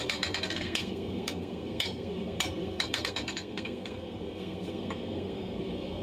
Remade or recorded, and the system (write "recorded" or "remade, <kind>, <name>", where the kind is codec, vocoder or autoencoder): remade, codec, SNAC